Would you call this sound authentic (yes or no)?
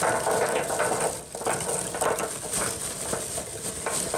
yes